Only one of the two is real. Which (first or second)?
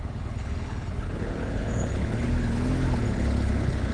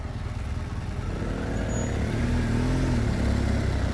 second